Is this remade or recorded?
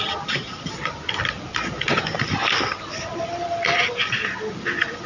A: recorded